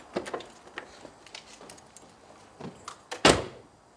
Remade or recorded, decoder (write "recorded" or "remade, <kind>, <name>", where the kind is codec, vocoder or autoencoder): recorded